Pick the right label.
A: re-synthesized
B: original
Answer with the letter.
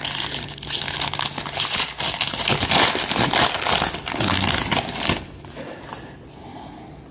B